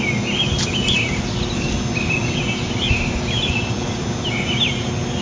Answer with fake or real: real